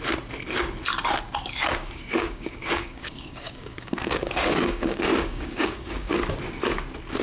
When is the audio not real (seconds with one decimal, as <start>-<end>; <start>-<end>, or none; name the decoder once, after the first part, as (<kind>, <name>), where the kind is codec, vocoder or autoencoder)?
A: 1.8-6.1 (codec, DAC)